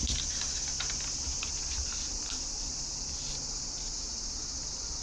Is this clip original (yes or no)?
yes